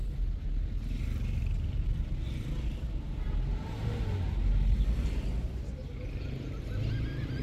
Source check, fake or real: real